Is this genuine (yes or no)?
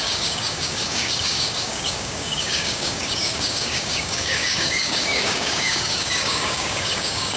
no